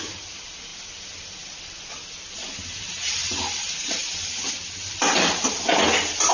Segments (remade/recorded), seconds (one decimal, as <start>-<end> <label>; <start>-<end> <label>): 0.0-6.3 recorded